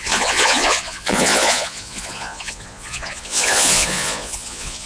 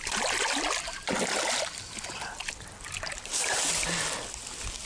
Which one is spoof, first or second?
first